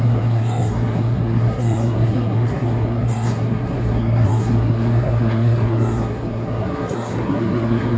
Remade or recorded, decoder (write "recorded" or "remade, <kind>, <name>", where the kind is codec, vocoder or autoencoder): remade, codec, SNAC